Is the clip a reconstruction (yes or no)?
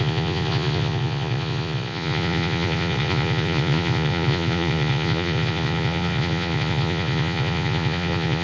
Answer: yes